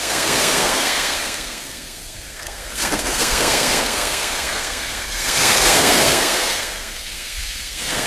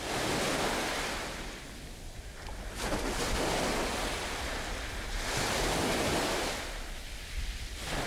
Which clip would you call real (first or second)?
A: second